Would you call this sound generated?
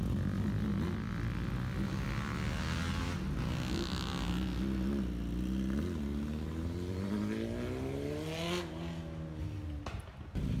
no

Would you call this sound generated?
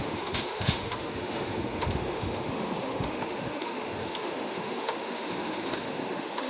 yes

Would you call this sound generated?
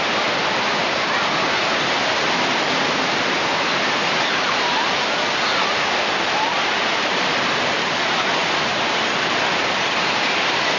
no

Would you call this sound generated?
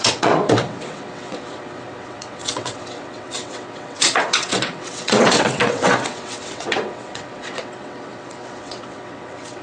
yes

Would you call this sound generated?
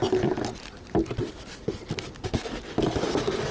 no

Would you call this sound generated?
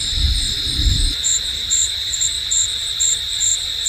no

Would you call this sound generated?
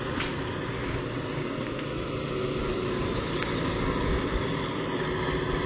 no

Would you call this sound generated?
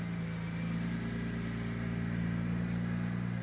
no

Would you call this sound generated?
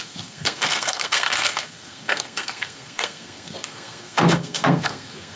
yes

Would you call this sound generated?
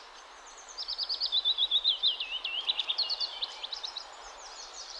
yes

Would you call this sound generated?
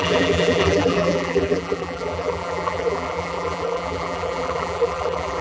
yes